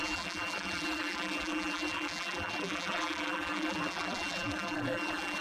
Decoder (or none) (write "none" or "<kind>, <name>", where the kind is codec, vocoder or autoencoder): vocoder, BigVGAN v2